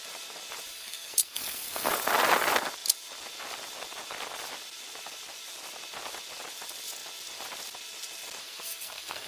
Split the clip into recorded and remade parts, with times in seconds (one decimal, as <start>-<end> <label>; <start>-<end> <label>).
0.0-0.7 recorded; 0.7-1.9 remade; 1.9-8.4 recorded; 8.4-9.3 remade